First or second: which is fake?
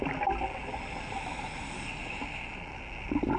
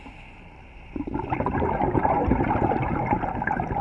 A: second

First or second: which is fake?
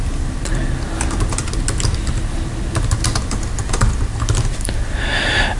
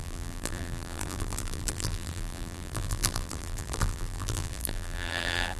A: second